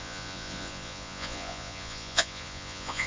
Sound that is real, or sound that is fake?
fake